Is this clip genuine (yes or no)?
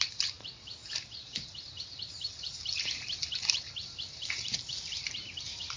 no